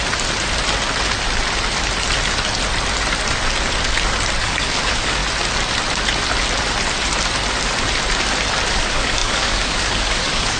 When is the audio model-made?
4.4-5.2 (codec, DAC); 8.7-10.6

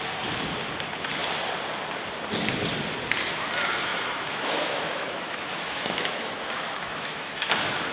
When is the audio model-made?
3.9-7.5 (autoencoder, DAC-VAE)

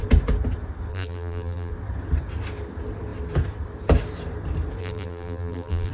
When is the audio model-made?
0.9-1.7 (vocoder, BigVGAN v2); 4.8-5.9